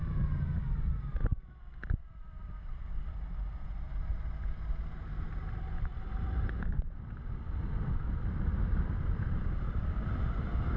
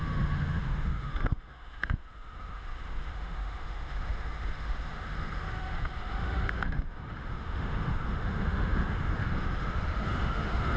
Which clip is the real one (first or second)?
first